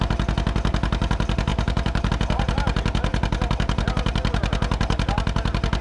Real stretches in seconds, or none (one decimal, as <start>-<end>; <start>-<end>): 0.0-1.5; 2.1-5.8